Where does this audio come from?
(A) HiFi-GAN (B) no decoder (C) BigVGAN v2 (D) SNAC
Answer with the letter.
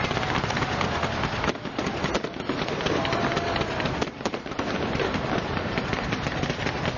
C